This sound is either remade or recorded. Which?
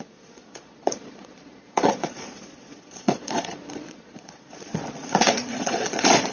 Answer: remade